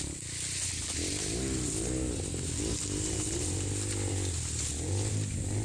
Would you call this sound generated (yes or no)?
no